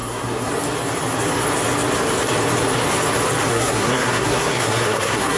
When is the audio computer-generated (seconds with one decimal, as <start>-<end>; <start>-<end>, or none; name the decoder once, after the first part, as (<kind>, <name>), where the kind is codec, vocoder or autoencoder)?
0.0-0.5 (codec, SNAC); 3.5-5.4